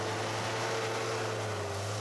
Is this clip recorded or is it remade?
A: recorded